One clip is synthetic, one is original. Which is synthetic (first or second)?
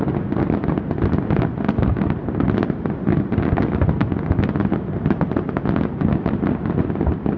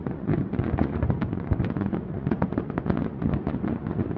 second